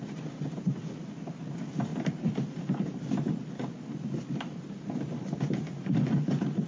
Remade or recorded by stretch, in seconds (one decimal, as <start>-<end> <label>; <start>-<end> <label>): 0.0-6.7 recorded